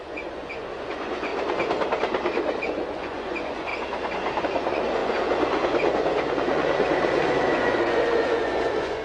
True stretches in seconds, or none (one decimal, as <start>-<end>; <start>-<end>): 1.3-2.6; 3.7-4.4